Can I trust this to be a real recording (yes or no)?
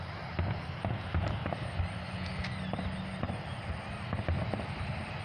yes